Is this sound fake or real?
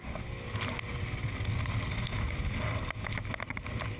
real